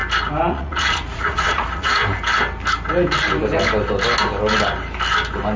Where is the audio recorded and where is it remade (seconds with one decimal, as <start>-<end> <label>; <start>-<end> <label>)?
0.0-0.5 recorded; 0.5-2.0 remade; 2.0-5.6 recorded